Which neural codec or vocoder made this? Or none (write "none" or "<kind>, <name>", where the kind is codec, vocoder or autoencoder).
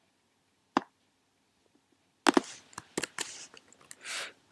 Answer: none